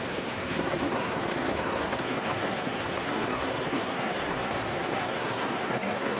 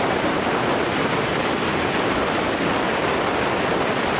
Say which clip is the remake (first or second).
first